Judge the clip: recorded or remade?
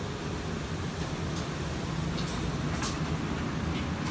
recorded